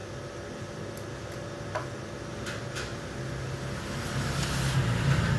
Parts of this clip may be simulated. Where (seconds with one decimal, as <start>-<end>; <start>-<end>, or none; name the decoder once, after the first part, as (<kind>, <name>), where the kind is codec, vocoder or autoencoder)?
none